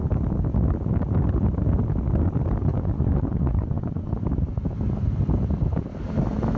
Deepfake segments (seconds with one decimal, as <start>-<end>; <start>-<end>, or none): 2.7-4.1

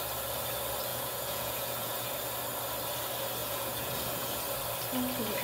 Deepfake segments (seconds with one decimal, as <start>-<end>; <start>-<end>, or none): 0.9-2.1; 3.4-4.4

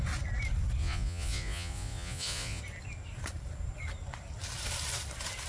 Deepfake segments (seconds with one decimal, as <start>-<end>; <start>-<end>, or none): 0.8-2.6